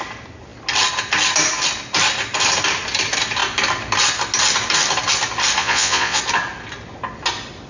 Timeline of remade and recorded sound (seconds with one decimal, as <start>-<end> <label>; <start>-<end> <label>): 0.0-5.6 recorded; 5.6-6.2 remade; 6.2-7.7 recorded

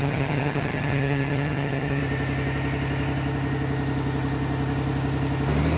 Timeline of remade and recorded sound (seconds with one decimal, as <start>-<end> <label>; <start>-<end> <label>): 0.0-2.0 remade; 2.0-5.8 recorded

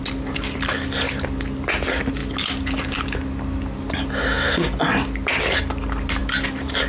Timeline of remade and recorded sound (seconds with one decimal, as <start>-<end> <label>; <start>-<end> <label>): 0.0-6.9 recorded

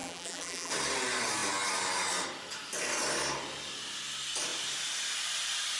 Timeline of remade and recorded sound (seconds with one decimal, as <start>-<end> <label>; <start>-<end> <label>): 0.0-0.7 remade; 0.7-5.8 recorded

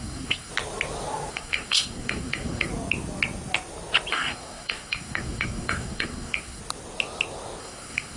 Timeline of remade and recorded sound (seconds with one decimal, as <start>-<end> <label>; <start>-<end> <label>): 0.0-0.5 remade; 0.5-1.3 recorded; 1.3-2.7 remade; 2.7-4.1 recorded; 4.1-6.6 remade; 6.6-7.6 recorded; 7.6-8.2 remade

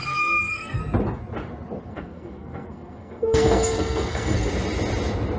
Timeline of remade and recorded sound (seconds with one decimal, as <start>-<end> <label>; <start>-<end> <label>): 0.0-0.8 remade; 0.8-1.9 recorded; 1.9-4.5 remade; 4.5-5.4 recorded

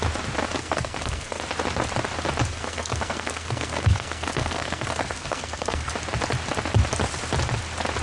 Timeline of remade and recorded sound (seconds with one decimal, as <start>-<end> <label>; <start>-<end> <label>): 0.0-0.6 recorded; 0.6-1.4 remade; 1.4-2.5 recorded; 2.5-5.9 remade; 5.9-8.0 recorded

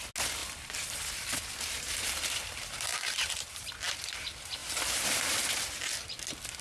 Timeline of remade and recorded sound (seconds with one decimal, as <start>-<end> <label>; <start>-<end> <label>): 0.0-0.4 recorded; 0.4-1.0 remade; 1.0-2.9 recorded; 2.9-4.1 remade; 4.1-4.6 recorded; 4.6-5.2 remade; 5.2-6.6 recorded